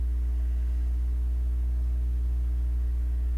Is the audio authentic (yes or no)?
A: yes